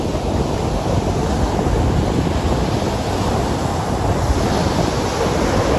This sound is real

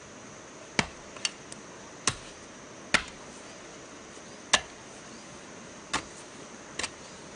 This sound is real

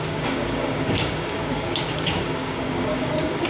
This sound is fake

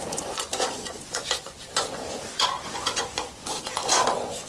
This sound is fake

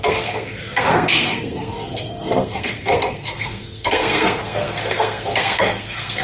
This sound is fake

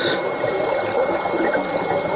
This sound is real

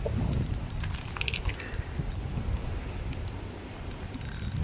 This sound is real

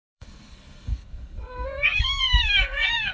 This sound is fake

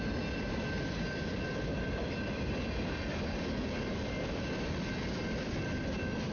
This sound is real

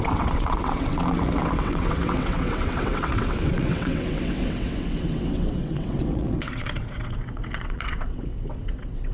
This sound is fake